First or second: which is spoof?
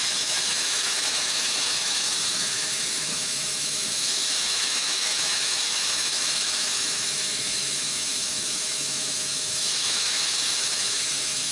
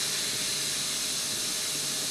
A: first